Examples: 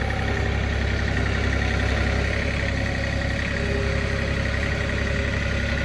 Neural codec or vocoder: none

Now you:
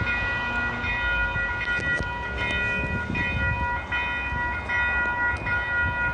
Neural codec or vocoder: none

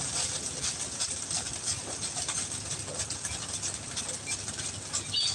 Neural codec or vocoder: none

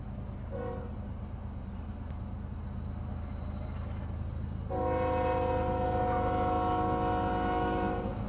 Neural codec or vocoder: none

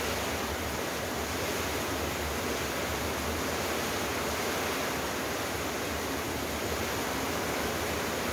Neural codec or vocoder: none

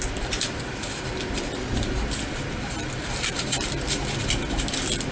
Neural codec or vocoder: vocoder, BigVGAN v2